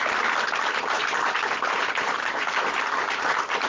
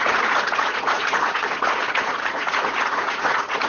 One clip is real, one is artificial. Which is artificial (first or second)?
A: second